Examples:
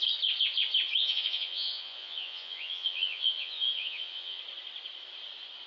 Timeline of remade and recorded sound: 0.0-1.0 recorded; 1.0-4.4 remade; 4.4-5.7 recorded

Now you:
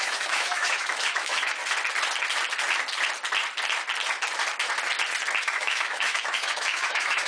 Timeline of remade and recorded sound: 0.0-1.6 remade; 1.6-5.4 recorded; 5.4-7.3 remade

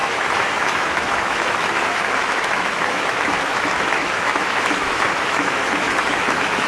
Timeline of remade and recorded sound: 0.0-6.7 remade

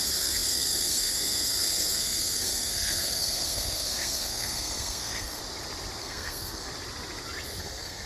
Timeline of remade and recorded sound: 0.0-5.4 remade; 5.4-6.0 recorded; 6.0-6.7 remade; 6.7-7.6 recorded; 7.6-8.1 remade

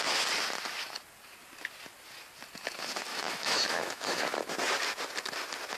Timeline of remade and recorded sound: 0.0-3.1 recorded; 3.1-4.2 remade; 4.2-5.8 recorded